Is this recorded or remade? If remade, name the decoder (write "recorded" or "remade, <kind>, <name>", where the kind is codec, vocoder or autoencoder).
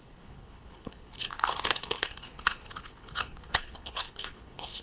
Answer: remade, codec, HILCodec